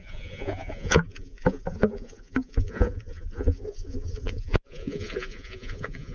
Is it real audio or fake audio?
fake